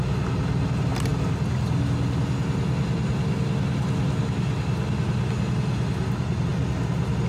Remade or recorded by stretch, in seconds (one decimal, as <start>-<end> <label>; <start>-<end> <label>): 0.0-7.3 recorded